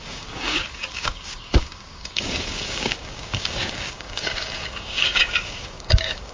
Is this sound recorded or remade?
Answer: remade